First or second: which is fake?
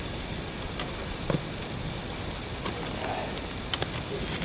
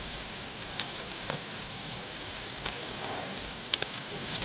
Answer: second